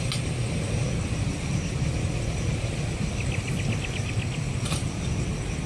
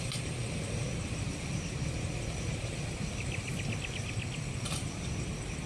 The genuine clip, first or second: first